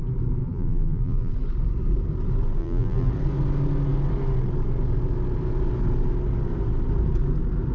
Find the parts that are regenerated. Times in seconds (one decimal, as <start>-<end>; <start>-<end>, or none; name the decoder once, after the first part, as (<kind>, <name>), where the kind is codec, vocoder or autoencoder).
0.4-1.3 (vocoder, BigVGAN v2); 2.6-3.1